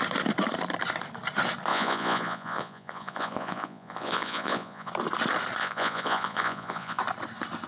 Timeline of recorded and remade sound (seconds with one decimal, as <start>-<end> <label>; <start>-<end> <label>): 0.0-1.7 recorded; 1.7-4.9 remade; 4.9-5.6 recorded; 5.6-7.0 remade; 7.0-7.7 recorded